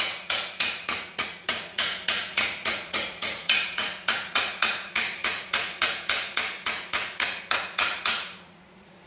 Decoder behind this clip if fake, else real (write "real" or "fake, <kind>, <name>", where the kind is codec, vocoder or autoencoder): fake, vocoder, Vocos